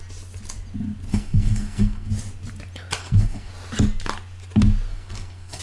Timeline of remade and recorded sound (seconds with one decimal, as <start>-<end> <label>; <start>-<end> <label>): 0.0-1.1 recorded; 1.1-2.1 remade; 2.1-3.0 recorded; 3.0-3.5 remade; 3.5-4.9 recorded; 4.9-5.6 remade